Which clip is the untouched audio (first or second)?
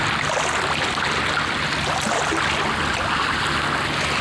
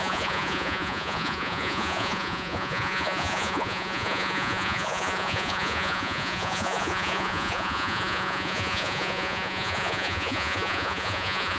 first